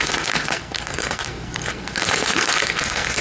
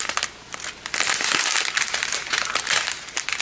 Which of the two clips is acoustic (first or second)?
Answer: second